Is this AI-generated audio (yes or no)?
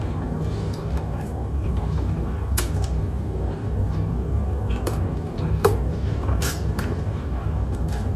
yes